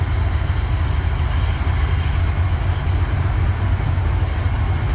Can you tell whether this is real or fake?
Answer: real